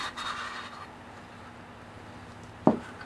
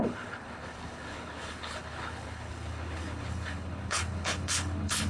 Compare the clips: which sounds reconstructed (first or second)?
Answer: second